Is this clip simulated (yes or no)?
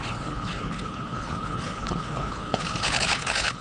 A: yes